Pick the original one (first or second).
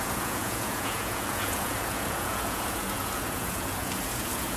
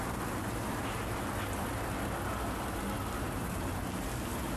second